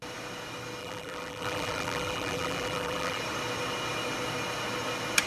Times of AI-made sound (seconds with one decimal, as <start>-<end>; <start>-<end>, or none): 0.8-3.2